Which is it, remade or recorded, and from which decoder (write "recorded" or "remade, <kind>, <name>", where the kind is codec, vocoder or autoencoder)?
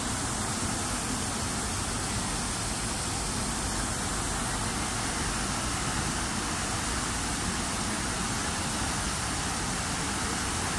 recorded